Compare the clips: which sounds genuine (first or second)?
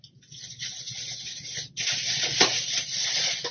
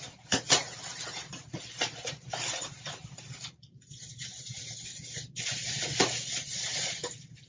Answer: first